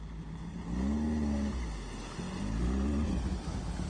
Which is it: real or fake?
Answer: real